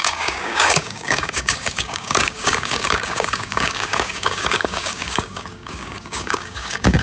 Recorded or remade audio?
remade